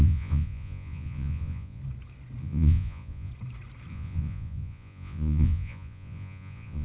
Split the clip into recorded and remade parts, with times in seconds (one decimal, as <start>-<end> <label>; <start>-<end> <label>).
0.0-1.8 remade; 1.8-2.4 recorded; 2.4-3.3 remade; 3.3-3.9 recorded; 3.9-6.8 remade